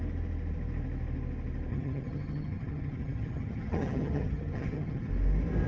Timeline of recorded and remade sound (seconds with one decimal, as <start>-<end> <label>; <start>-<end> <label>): 0.0-1.7 recorded; 1.7-5.1 remade; 5.1-5.7 recorded